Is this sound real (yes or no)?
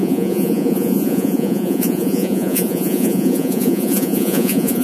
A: no